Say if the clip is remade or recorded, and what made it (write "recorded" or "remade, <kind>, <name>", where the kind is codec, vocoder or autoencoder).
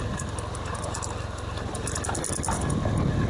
recorded